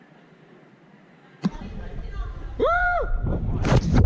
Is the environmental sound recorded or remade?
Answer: remade